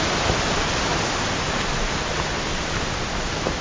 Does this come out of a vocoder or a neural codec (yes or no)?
no